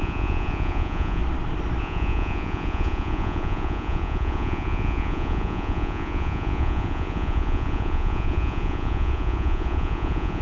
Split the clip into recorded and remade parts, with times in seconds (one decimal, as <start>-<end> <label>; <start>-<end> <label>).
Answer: 0.0-1.2 remade; 1.2-1.8 recorded; 1.8-10.4 remade